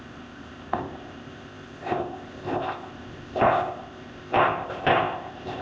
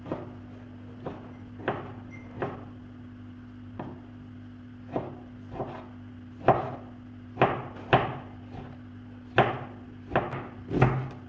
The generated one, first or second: first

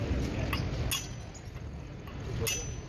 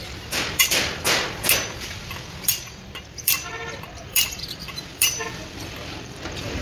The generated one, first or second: second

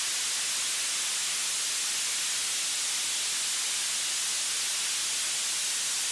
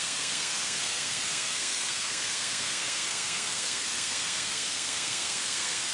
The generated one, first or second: second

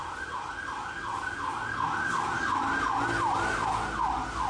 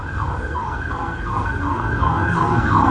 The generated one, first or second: second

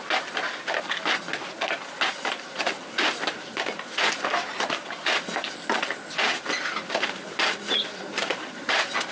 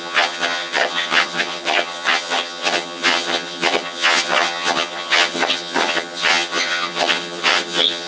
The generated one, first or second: second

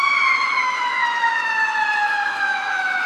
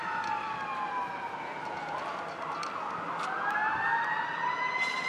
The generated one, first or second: first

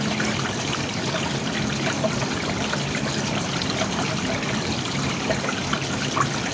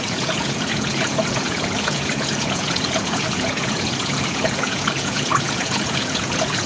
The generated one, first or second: second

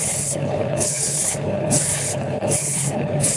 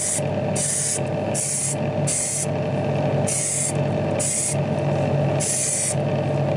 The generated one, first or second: first